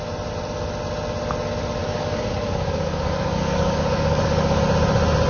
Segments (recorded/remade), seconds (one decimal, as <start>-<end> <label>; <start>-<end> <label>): 0.0-1.8 recorded; 1.8-4.6 remade; 4.6-5.3 recorded